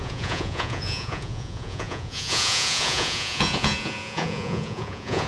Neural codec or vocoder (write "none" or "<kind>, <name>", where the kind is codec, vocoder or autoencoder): vocoder, Vocos